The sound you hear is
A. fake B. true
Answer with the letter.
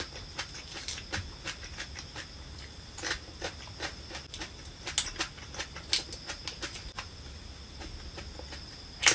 B